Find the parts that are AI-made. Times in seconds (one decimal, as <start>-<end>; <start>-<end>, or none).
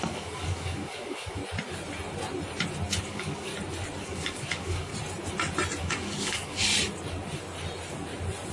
0.0-1.4; 3.0-3.5; 4.0-4.9; 5.8-6.7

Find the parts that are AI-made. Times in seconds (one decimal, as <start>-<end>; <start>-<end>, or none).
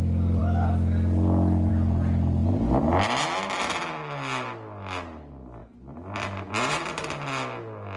5.6-6.7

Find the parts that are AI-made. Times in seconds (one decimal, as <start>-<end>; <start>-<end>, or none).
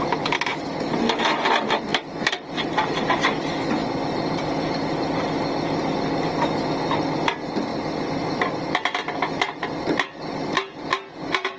none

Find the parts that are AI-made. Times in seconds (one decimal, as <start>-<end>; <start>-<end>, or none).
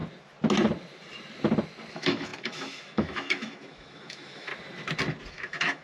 1.9-4.5; 5.3-5.8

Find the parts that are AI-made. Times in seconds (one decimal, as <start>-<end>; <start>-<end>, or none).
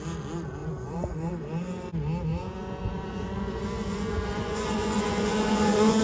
0.6-1.3; 2.3-6.0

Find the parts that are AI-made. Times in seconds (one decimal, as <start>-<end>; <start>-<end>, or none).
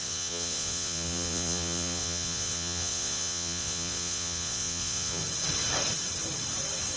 0.0-5.2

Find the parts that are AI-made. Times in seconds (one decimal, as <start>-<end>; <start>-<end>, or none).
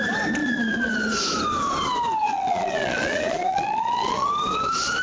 0.4-0.9; 2.2-4.3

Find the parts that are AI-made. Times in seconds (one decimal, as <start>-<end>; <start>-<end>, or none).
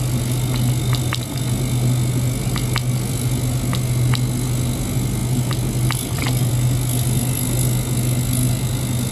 none